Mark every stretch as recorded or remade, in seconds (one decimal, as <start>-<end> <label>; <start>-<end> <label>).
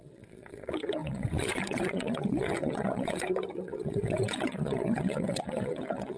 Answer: 0.0-6.2 remade